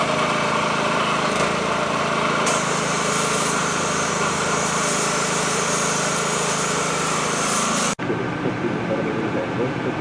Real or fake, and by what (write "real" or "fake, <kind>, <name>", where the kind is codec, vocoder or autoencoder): fake, vocoder, BigVGAN v2